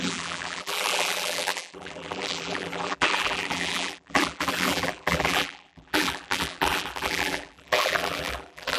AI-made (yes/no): yes